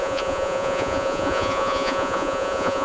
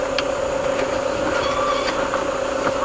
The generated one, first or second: first